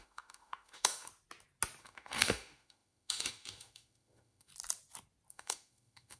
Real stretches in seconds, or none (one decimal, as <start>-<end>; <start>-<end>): 1.1-1.8; 4.5-5.3